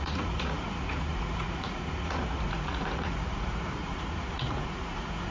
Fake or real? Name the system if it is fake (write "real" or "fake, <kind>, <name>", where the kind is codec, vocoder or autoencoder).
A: fake, vocoder, Vocos